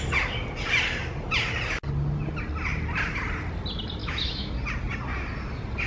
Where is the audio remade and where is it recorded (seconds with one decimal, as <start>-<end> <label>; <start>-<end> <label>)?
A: 0.0-4.0 recorded; 4.0-4.5 remade; 4.5-5.9 recorded